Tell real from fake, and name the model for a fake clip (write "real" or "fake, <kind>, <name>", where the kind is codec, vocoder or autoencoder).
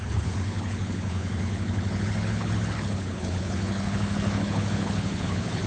fake, codec, HILCodec